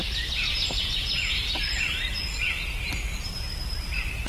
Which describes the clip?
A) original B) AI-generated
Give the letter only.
A